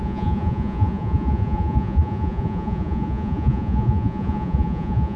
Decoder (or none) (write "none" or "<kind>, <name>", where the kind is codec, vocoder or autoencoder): vocoder, Vocos